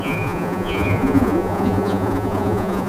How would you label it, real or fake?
fake